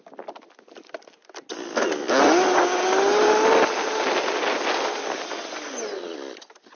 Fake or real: real